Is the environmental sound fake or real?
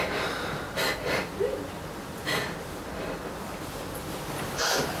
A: real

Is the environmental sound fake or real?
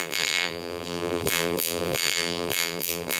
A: fake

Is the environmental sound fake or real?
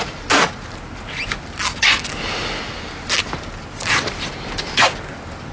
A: real